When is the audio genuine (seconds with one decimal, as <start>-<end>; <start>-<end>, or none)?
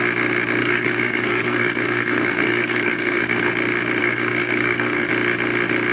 0.0-0.6; 3.5-4.0; 5.1-5.9